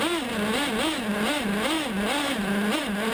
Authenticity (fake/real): real